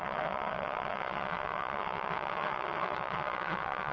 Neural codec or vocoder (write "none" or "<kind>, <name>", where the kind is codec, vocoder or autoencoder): vocoder, WaveNeXt